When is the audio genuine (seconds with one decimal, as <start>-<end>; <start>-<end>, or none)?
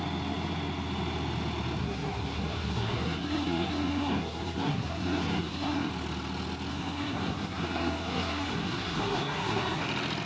0.0-1.8; 5.9-6.7; 9.8-10.3